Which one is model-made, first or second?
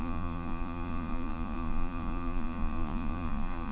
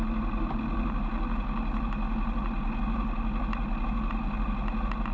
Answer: first